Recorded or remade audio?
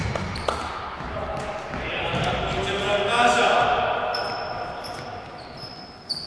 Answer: recorded